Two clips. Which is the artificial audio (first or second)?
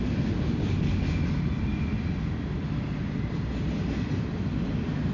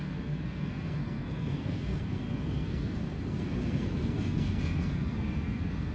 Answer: second